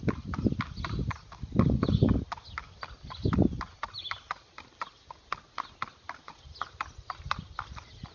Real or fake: real